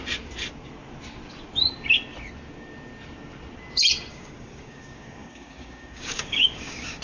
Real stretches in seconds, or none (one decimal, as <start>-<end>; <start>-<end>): 0.0-4.1